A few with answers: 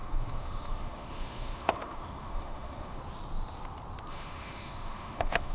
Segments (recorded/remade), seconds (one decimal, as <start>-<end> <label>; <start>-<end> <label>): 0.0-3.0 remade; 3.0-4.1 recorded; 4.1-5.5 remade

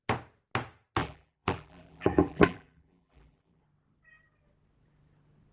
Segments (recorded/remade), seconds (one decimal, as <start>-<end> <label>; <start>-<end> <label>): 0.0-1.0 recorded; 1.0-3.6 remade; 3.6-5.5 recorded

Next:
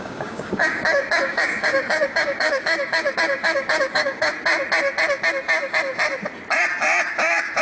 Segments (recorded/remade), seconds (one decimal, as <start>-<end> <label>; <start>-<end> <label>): 0.0-4.3 remade; 4.3-7.1 recorded; 7.1-7.6 remade